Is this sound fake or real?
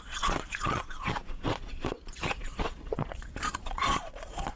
fake